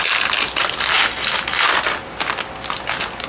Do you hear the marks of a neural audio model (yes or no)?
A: no